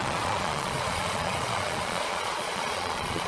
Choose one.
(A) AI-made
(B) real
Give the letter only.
A